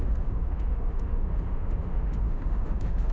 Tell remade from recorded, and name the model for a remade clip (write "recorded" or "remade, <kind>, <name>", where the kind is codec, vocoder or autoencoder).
remade, autoencoder, DAC-VAE